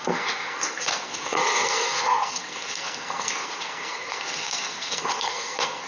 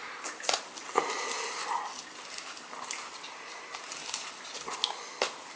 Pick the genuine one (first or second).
second